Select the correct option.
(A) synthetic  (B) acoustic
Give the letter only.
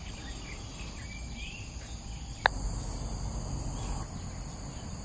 B